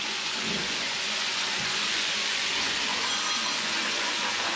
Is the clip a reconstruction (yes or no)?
yes